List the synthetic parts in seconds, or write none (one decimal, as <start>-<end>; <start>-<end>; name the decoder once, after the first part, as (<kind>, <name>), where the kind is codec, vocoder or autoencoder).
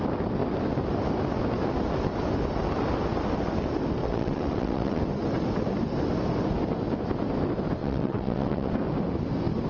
4.0-5.0 (vocoder, WaveNeXt); 7.8-8.7